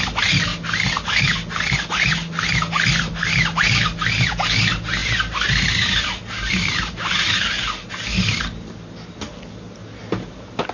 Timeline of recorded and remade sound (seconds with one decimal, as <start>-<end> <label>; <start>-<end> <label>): 0.0-10.7 recorded